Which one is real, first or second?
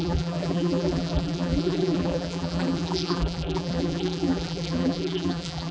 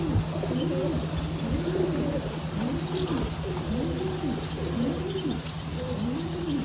second